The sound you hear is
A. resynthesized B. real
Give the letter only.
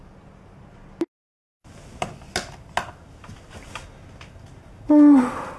B